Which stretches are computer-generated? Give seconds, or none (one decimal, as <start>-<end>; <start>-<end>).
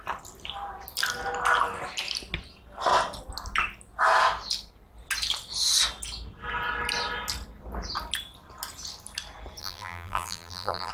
9.6-10.9